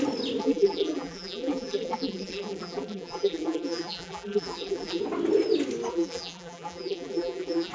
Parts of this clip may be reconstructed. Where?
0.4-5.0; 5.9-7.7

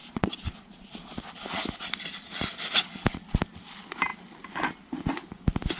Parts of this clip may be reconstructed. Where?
0.0-1.3